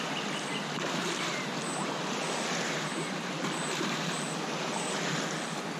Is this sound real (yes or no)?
yes